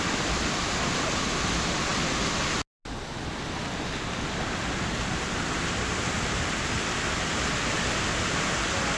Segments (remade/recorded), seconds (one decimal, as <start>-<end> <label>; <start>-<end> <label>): 0.0-9.0 recorded